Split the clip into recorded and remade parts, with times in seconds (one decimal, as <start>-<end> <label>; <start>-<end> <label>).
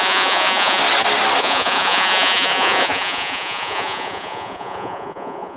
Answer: 0.0-0.8 remade; 0.8-1.4 recorded; 1.4-5.6 remade